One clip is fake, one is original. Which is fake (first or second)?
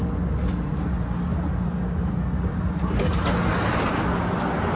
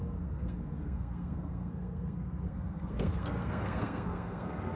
second